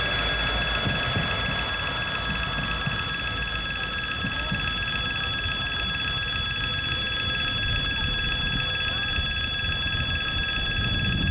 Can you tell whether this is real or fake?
real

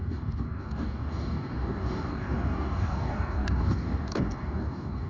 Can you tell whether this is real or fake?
fake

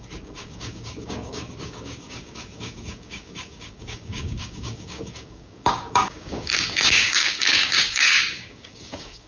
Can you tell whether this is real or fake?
fake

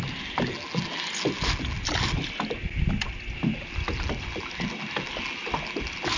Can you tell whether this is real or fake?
real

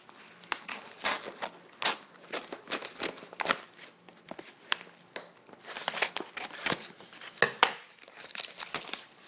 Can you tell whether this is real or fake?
real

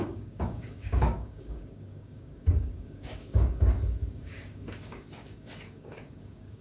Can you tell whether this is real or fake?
fake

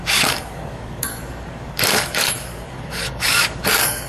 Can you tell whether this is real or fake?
fake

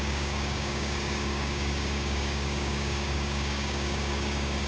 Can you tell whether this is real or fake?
fake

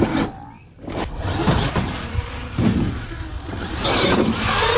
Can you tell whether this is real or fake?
real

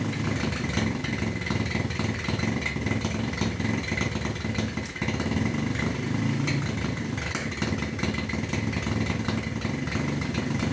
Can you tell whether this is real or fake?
real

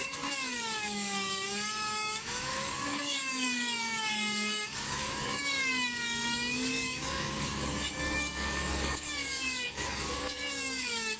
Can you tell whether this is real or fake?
fake